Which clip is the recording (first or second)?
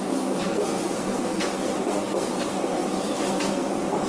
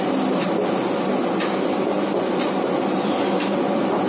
second